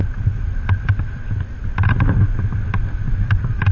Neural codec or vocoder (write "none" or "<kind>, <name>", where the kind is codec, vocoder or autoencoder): none